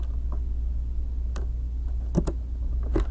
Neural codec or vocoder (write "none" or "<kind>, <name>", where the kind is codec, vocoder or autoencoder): none